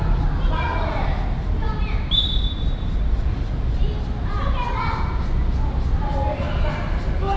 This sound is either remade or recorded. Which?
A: recorded